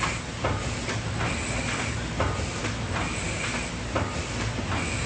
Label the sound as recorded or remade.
recorded